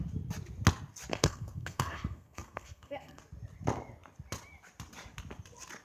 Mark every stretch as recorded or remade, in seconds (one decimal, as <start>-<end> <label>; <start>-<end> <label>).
0.0-1.1 recorded; 1.1-3.2 remade; 3.2-5.8 recorded